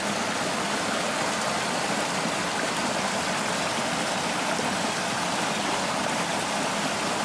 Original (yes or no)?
yes